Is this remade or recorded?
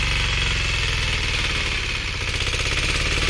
recorded